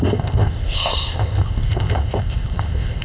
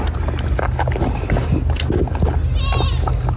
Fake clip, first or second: first